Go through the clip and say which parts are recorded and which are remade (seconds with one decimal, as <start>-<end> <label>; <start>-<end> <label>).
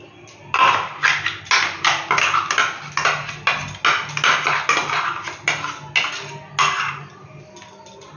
0.0-8.2 recorded